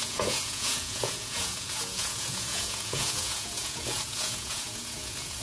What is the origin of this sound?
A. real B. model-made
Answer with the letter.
B